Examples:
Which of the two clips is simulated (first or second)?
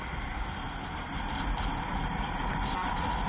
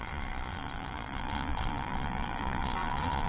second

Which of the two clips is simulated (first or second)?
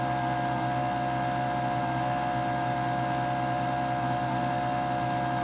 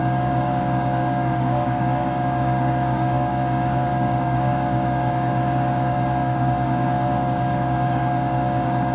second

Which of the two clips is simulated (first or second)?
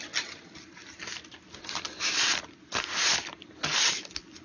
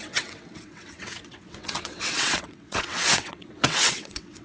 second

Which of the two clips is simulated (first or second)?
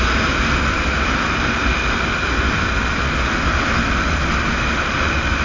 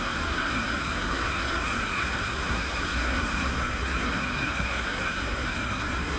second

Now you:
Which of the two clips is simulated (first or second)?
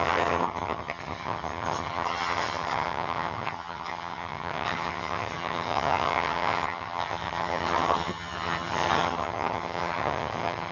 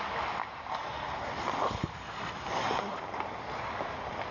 first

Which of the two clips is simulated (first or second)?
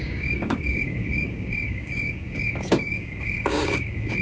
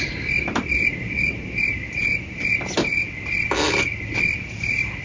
first